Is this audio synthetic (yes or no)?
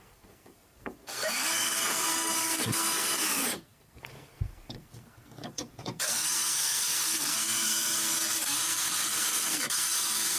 yes